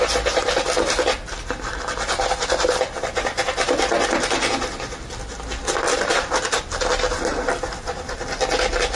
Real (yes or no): yes